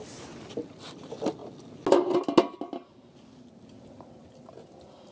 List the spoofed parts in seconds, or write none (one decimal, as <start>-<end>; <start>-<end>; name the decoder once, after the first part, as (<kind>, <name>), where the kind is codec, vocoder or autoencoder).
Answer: none